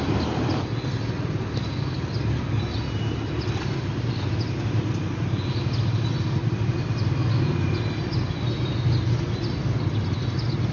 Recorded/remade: recorded